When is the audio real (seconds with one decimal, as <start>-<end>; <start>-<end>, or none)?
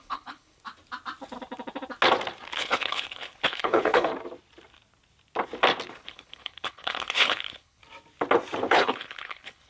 0.6-2.6; 4.1-5.9; 7.8-8.7